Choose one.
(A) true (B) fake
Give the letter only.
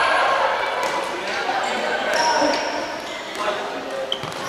A